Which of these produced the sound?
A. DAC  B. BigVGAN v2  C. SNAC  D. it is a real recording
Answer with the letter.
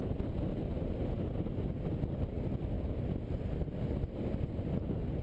D